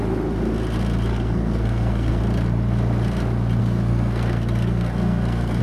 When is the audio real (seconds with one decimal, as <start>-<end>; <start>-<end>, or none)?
0.0-1.1; 2.2-3.6